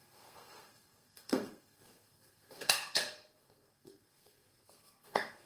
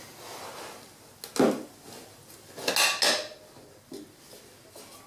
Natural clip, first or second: second